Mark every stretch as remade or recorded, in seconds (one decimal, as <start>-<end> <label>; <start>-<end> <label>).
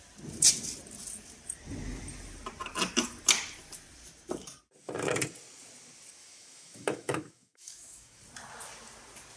0.0-6.2 recorded; 6.2-8.2 remade; 8.2-9.4 recorded